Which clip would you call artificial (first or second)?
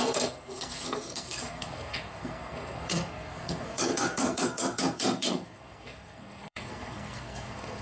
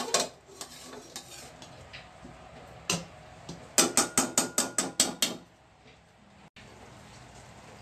first